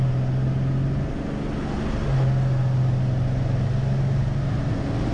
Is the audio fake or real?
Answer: real